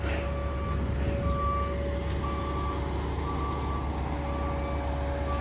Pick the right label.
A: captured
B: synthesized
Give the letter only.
A